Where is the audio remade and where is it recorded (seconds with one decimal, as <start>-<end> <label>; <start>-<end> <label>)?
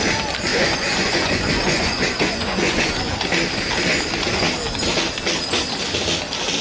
0.0-0.5 recorded; 0.5-3.1 remade; 3.1-6.6 recorded